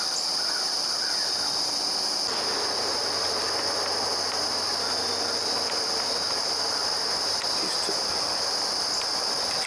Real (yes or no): yes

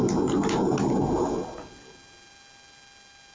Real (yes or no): yes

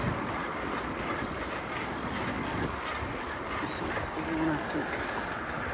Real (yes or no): yes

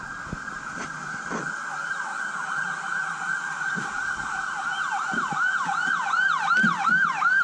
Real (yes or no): no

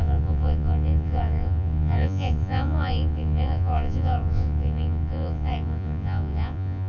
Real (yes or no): no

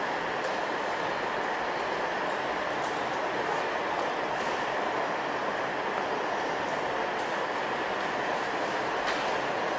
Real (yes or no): yes